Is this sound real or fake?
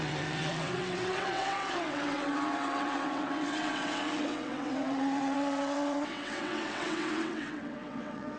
fake